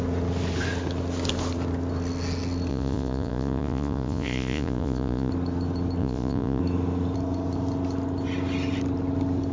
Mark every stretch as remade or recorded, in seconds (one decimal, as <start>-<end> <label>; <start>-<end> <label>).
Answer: 0.0-2.7 recorded; 2.7-5.3 remade; 5.3-6.0 recorded; 6.0-6.6 remade; 6.6-9.5 recorded